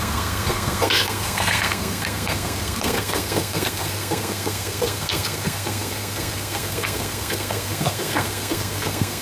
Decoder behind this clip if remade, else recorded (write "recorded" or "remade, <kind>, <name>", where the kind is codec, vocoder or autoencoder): remade, codec, SNAC